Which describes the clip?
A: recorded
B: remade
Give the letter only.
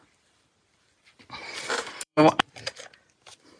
B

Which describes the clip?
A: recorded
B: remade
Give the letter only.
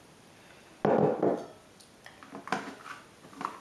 A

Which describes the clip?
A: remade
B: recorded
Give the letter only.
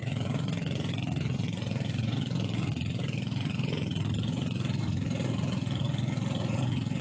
A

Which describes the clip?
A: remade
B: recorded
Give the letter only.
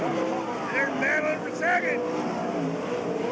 B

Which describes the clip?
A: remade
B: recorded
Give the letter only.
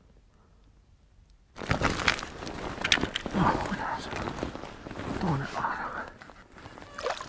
B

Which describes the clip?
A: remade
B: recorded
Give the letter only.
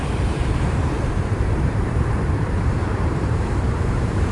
A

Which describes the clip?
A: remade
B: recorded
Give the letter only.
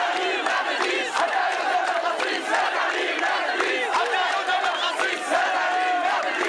A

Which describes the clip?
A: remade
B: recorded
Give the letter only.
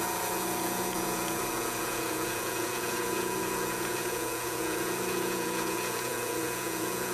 A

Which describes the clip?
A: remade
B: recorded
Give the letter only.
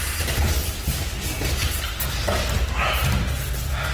B